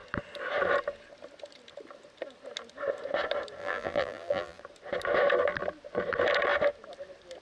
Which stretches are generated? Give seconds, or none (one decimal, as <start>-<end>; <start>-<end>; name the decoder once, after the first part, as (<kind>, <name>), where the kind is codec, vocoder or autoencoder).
3.6-4.6 (vocoder, BigVGAN v2)